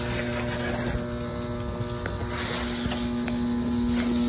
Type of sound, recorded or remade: recorded